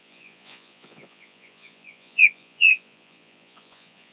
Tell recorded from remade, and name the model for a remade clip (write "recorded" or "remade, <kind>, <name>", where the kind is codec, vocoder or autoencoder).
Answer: remade, vocoder, Vocos